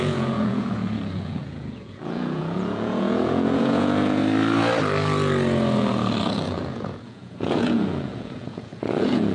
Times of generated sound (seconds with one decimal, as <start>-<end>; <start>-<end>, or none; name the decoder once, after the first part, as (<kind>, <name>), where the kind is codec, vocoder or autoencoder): 0.0-4.2 (vocoder, Vocos); 6.2-9.3